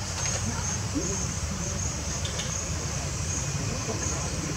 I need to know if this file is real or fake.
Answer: fake